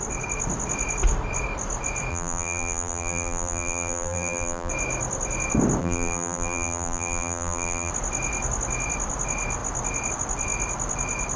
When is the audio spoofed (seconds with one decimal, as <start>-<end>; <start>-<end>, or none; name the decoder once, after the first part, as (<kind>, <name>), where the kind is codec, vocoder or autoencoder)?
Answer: 2.1-4.7 (vocoder, BigVGAN v2); 5.8-7.9